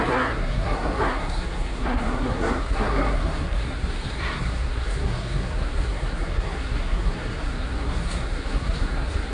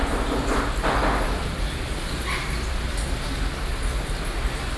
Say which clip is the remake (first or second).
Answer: first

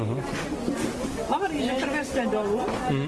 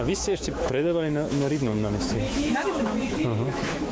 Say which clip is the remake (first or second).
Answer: second